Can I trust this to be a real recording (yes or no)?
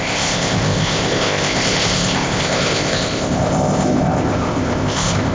no